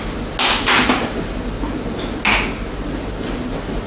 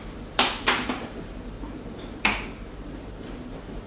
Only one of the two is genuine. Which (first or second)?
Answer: first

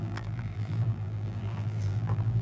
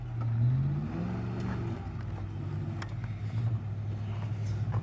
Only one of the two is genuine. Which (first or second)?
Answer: second